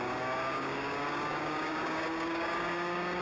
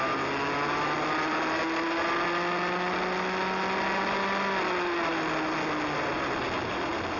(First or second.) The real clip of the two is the second